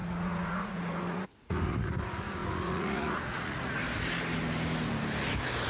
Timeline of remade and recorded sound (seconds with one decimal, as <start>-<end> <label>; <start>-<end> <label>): 0.0-3.8 remade; 3.8-5.7 recorded